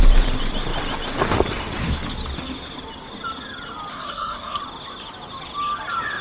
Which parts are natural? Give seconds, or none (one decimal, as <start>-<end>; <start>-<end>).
0.0-3.9; 4.6-6.2